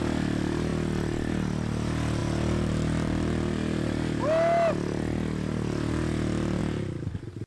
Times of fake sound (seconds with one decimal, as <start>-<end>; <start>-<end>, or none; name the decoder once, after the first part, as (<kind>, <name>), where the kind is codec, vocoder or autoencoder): none